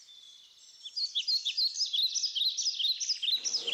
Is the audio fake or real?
real